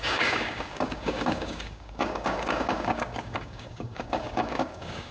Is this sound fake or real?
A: fake